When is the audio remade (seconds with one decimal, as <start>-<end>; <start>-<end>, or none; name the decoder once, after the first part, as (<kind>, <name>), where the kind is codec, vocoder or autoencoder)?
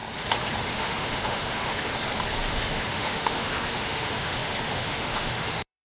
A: 0.7-1.9 (autoencoder, DAC-VAE); 2.5-5.8